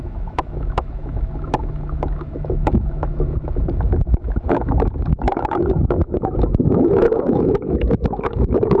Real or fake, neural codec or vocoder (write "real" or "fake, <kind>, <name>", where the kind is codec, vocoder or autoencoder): fake, autoencoder, DAC-VAE